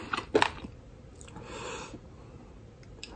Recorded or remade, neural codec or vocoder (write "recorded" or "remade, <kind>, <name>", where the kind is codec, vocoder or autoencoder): recorded